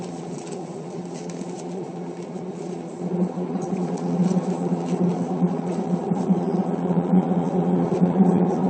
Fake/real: fake